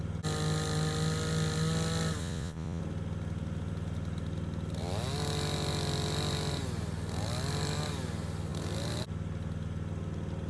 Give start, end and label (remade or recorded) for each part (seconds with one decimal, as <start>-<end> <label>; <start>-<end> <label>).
0.0-2.2 recorded; 2.2-2.8 remade; 2.8-10.5 recorded